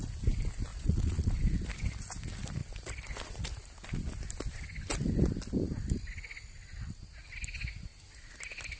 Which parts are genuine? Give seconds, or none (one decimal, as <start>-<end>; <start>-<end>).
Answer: 0.0-0.7; 1.4-8.8